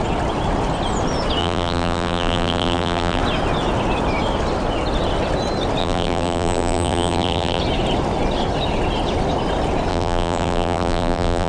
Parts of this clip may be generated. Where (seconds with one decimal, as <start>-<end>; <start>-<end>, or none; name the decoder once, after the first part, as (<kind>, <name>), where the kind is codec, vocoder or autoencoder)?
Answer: 1.4-3.2 (vocoder, BigVGAN v2); 5.8-7.6; 9.9-11.5